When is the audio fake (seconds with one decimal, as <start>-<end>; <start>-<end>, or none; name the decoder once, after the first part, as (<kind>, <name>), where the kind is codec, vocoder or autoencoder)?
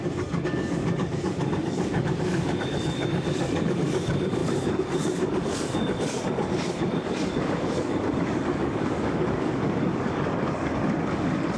0.0-11.6 (codec, DAC)